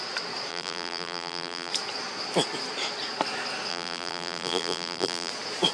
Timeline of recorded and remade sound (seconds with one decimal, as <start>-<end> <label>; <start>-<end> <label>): 0.0-0.5 recorded; 0.5-1.7 remade; 1.7-3.7 recorded; 3.7-5.3 remade; 5.3-5.7 recorded